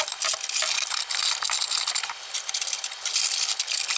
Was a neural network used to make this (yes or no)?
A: no